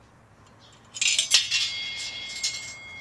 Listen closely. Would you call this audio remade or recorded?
recorded